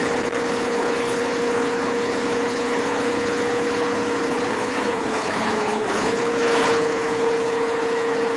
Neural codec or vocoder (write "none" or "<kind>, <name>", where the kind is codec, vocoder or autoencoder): codec, HILCodec